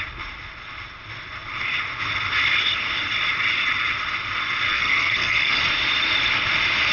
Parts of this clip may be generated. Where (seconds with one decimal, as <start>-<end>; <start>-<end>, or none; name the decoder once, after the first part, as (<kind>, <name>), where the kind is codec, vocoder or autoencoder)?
4.7-5.6 (codec, SNAC)